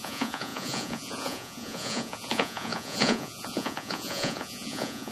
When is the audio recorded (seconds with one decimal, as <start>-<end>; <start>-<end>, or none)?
none